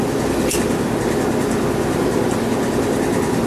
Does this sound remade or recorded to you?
recorded